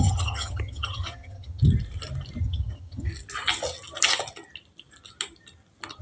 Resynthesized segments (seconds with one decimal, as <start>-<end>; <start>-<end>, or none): 0.0-1.6; 2.4-3.1